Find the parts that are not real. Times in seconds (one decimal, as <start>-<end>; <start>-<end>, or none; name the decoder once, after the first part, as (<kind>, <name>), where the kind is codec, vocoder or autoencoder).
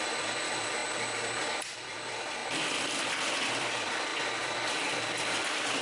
0.0-4.1 (vocoder, BigVGAN v2); 4.7-5.8